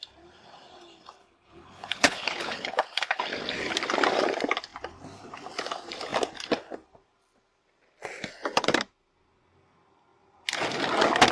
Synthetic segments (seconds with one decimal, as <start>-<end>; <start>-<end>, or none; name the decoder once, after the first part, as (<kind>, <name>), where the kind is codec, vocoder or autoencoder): 1.2-3.2 (codec, HILCodec)